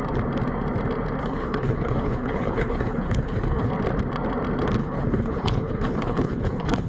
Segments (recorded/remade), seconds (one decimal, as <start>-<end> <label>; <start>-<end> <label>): 0.0-1.2 recorded; 1.2-3.7 remade; 3.7-4.8 recorded; 4.8-6.9 remade